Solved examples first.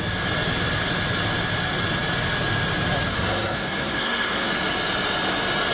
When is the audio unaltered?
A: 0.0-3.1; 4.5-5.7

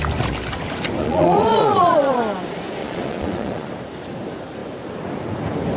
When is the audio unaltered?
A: 0.0-1.0; 2.2-2.8; 3.7-5.8

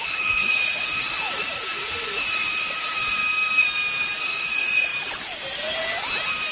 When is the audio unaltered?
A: 3.2-4.2; 4.9-6.5

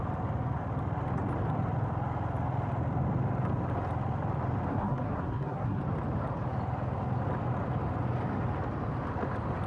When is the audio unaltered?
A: 0.0-4.7; 5.8-9.7